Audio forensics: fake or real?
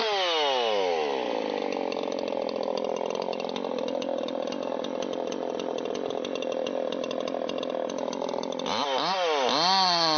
real